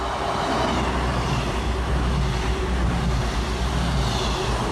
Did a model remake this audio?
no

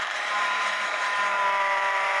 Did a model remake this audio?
yes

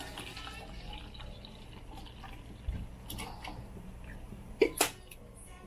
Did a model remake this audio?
no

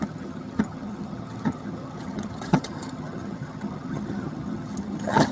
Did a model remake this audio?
yes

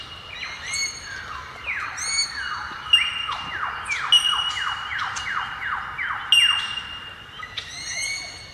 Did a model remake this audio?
no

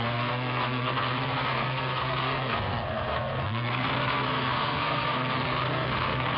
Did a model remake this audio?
yes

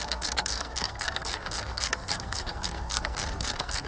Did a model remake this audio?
yes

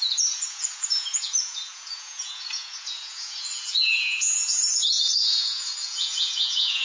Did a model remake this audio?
yes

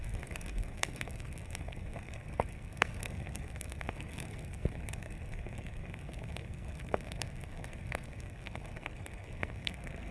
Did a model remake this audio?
yes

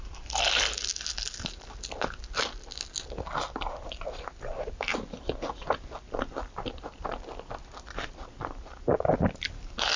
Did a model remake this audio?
no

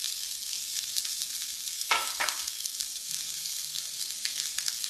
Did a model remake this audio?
yes